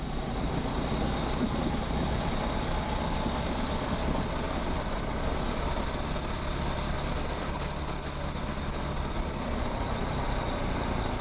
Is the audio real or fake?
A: real